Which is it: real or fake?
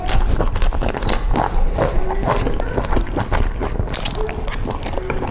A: real